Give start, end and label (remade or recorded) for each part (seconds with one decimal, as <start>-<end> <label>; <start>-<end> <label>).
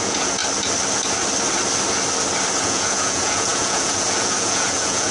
0.0-0.4 remade; 0.4-2.6 recorded; 2.6-5.1 remade